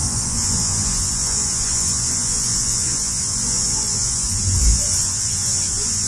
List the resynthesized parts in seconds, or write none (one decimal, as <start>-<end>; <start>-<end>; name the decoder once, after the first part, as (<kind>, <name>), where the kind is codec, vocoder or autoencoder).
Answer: 0.0-6.1 (vocoder, Vocos)